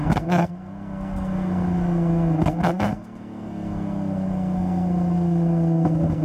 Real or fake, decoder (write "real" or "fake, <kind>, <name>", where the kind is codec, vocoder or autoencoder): fake, codec, SNAC